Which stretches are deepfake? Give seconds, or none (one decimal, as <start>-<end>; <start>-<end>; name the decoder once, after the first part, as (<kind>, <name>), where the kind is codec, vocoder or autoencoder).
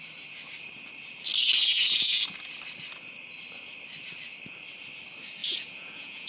5.4-6.3 (vocoder, Vocos)